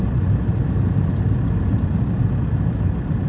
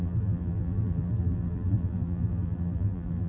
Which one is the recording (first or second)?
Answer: first